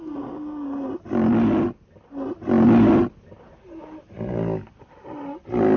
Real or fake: real